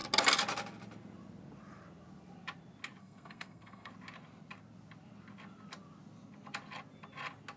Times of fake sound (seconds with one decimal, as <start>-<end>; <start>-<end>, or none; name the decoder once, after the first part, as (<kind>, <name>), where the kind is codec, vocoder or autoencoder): 3.0-3.9 (codec, SNAC)